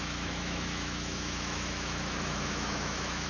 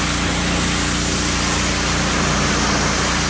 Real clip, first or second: second